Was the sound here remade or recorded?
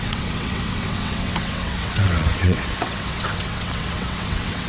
remade